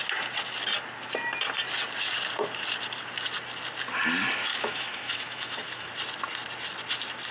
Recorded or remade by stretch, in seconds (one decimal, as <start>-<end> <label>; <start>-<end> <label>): 0.0-4.5 recorded; 4.5-5.9 remade; 5.9-7.3 recorded